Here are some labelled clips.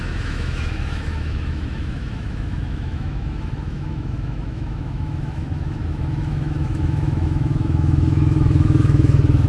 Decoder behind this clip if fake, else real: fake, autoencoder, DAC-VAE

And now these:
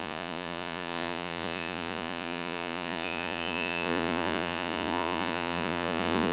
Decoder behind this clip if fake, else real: fake, vocoder, Vocos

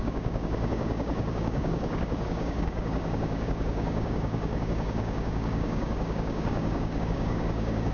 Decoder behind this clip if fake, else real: fake, codec, DAC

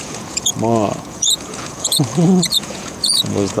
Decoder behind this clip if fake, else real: fake, vocoder, Vocos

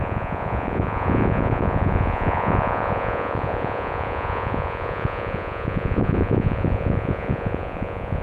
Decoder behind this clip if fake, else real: fake, vocoder, Vocos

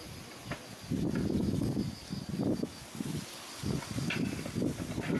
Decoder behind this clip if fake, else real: real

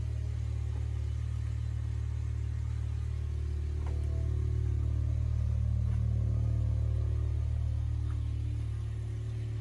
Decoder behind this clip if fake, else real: real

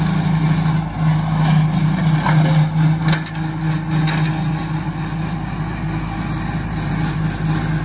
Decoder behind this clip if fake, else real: real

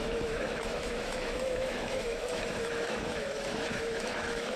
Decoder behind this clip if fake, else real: fake, autoencoder, DAC-VAE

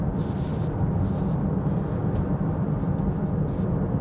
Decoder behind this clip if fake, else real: real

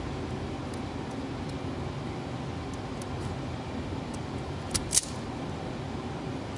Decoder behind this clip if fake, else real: real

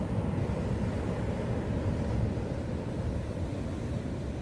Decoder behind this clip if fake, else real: real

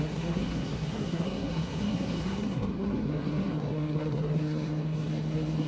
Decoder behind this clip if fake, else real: fake, codec, SNAC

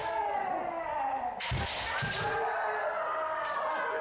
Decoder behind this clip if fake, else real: real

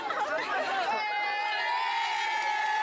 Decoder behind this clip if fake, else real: real